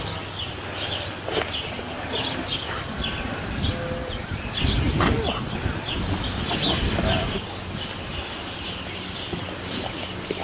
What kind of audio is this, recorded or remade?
recorded